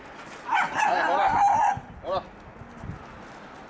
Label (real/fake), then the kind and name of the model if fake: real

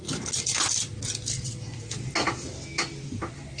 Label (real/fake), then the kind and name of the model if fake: real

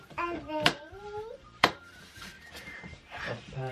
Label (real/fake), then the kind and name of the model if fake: fake, vocoder, BigVGAN v2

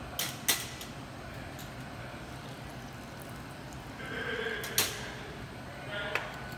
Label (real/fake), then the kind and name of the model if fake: real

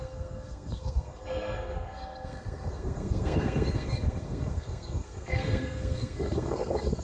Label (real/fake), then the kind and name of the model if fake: fake, codec, SNAC